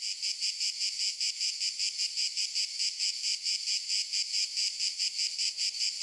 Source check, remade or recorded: remade